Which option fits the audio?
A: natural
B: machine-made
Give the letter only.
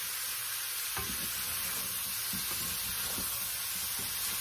A